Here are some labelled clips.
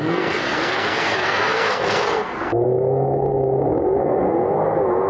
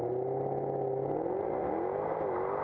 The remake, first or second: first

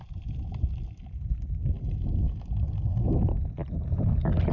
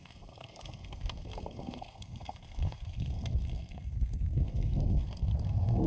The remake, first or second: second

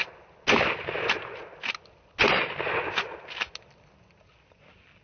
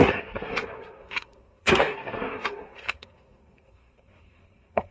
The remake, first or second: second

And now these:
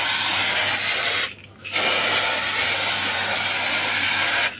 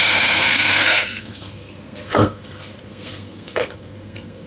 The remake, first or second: second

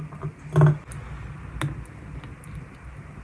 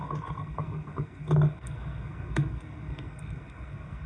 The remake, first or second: second